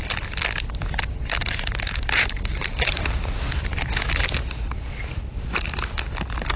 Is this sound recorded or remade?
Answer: recorded